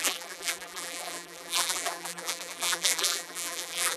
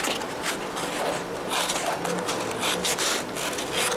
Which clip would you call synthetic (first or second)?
first